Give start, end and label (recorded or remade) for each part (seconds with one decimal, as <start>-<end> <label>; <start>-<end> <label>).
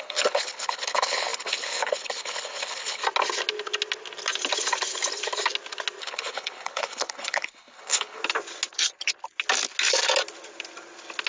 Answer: 0.0-3.0 remade; 3.0-6.0 recorded; 6.0-8.2 remade; 8.2-11.3 recorded